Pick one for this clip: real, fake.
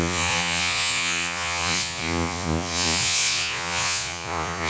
fake